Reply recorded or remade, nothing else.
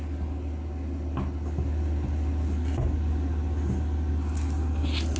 recorded